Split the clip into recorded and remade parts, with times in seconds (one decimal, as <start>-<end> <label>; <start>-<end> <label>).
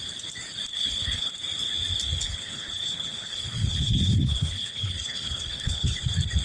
0.0-0.7 recorded; 0.7-1.3 remade; 1.3-2.2 recorded; 2.2-6.0 remade; 6.0-6.4 recorded